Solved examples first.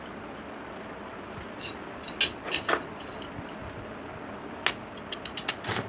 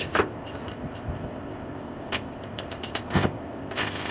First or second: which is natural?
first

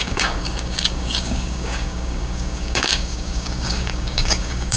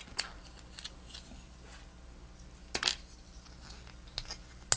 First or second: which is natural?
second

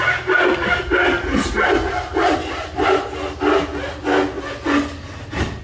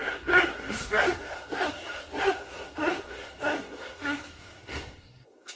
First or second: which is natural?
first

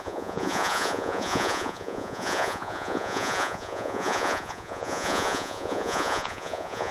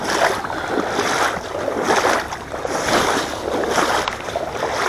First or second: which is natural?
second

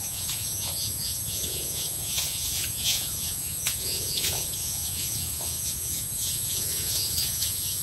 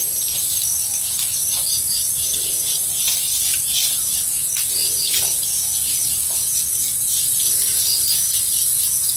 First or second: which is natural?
second